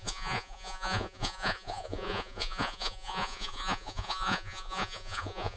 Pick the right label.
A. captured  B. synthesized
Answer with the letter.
B